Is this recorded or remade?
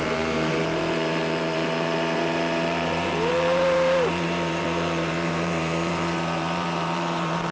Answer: remade